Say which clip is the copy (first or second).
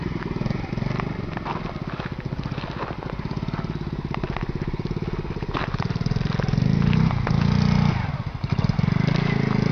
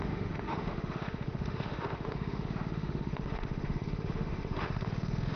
second